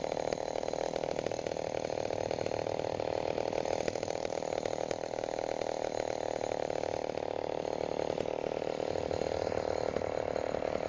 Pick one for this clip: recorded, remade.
remade